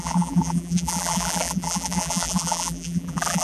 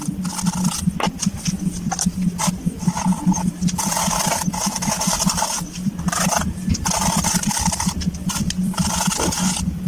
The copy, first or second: first